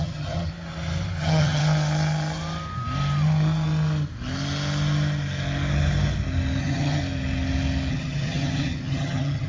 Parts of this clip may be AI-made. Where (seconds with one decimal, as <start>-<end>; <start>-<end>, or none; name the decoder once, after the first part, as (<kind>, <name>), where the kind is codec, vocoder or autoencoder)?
0.0-0.5 (vocoder, HiFi-GAN); 1.2-1.6; 6.6-7.0; 7.9-9.5